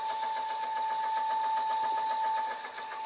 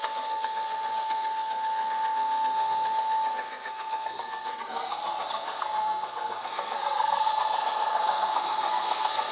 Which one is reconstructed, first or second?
second